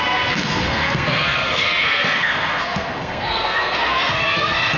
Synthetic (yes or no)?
yes